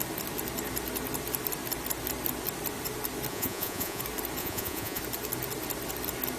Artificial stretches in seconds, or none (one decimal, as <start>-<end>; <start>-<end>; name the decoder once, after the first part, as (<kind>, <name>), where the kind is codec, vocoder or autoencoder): 3.3-4.0 (vocoder, Vocos); 4.4-5.0